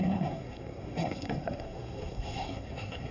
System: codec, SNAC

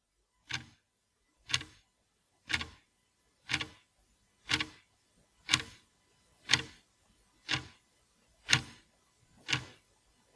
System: none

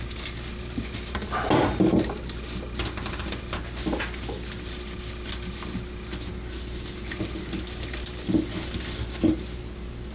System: none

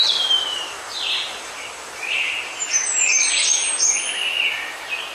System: vocoder, BigVGAN v2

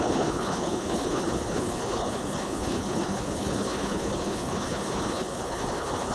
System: codec, HILCodec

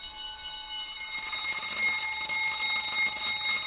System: none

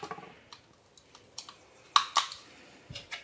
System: none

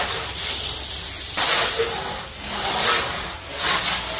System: none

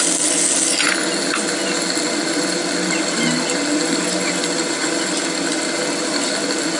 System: none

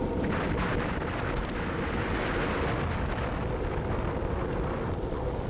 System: none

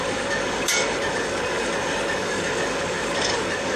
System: codec, DAC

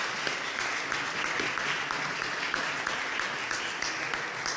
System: none